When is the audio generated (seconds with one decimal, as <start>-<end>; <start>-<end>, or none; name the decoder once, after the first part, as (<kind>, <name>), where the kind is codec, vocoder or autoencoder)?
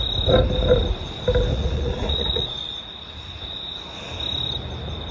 1.5-2.9 (vocoder, Vocos)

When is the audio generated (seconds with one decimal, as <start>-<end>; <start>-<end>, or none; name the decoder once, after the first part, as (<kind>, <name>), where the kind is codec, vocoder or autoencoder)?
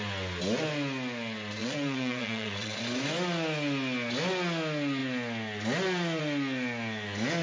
1.6-2.8 (vocoder, Vocos)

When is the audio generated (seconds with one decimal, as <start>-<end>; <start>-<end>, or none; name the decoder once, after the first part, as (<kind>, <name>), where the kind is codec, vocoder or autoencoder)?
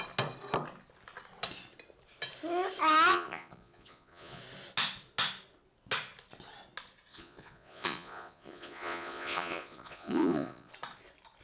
3.1-4.4 (vocoder, Vocos); 7.1-10.7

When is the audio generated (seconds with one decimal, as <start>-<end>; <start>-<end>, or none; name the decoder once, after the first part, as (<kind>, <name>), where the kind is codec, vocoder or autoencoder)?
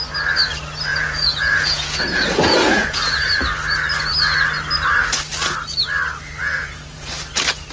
0.9-3.0 (vocoder, Vocos); 6.4-7.1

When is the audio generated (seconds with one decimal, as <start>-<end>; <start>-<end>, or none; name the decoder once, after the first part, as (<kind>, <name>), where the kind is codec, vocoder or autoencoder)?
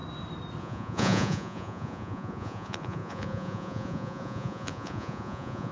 0.6-5.7 (vocoder, Vocos)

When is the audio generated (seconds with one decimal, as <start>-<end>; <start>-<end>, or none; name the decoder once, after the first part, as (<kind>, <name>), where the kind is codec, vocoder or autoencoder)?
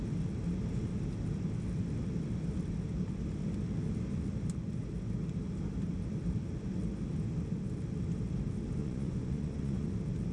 8.8-9.9 (vocoder, Vocos)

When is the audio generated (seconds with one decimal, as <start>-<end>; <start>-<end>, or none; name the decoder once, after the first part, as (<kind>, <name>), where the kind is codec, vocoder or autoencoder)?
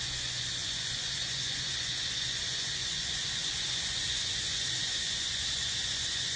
0.0-6.4 (vocoder, Vocos)